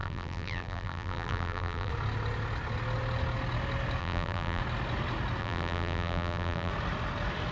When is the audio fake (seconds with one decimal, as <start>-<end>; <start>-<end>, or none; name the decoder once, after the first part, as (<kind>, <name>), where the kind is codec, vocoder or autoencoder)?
0.0-1.9 (vocoder, BigVGAN v2); 4.0-4.6; 5.4-6.7